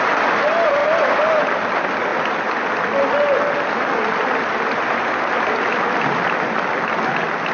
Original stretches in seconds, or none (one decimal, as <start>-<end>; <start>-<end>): 0.0-7.5